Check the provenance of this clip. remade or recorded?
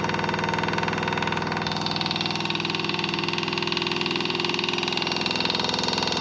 recorded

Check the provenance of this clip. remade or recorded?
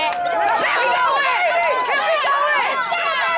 recorded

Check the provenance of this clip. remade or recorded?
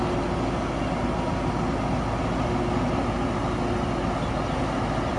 recorded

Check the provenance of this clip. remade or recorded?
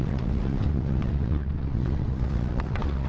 remade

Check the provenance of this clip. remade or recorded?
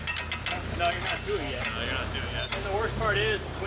recorded